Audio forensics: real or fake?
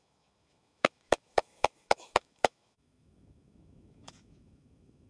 fake